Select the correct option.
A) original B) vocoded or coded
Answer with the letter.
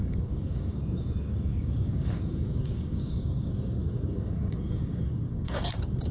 B